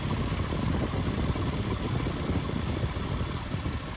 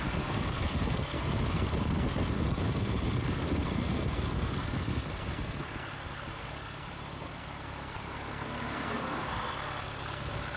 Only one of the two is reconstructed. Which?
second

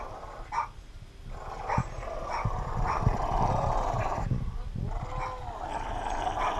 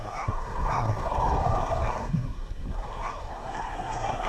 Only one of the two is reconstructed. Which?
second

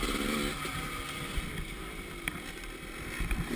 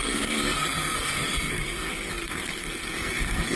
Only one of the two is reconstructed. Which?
second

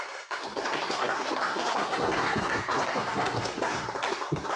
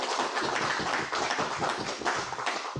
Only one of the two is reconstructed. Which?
first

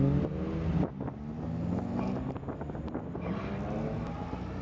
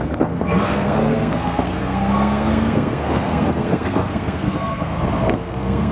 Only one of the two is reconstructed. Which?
second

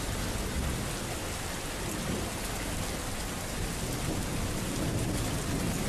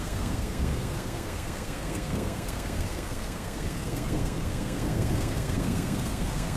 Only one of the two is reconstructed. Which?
second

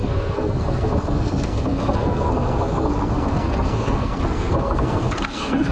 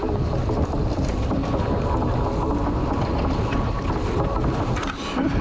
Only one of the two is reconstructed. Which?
first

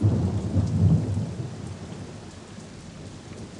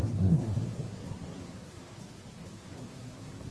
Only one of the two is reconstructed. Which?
second